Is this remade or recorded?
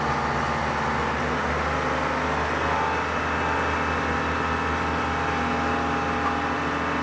recorded